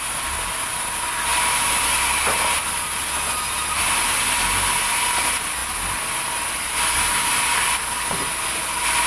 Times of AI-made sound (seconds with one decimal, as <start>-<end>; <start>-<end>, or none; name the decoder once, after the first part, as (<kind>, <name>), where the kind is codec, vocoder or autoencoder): none